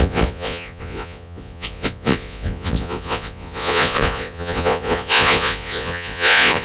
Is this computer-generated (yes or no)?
yes